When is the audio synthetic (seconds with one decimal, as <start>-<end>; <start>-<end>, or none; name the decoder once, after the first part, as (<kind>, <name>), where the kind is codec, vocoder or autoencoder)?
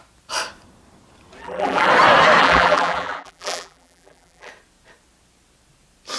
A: 1.4-1.9 (vocoder, BigVGAN v2); 2.4-4.5